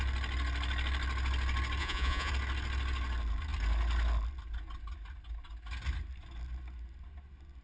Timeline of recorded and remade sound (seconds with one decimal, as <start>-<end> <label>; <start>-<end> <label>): 0.0-1.8 recorded; 1.8-2.3 remade; 2.3-7.6 recorded

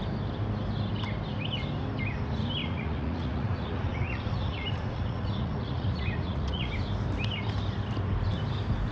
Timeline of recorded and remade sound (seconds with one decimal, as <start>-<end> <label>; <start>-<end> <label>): 0.0-2.6 recorded; 2.6-6.7 remade; 6.7-8.9 recorded

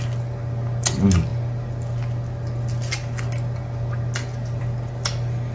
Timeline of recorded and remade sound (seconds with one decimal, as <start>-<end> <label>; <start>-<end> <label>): 0.0-5.5 recorded